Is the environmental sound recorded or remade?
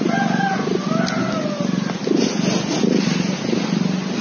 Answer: recorded